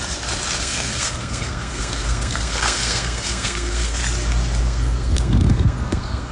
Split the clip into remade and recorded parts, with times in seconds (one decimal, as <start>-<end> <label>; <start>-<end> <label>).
0.0-0.6 recorded; 0.6-4.0 remade; 4.0-4.6 recorded; 4.6-6.3 remade